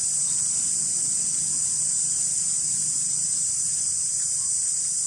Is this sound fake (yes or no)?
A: no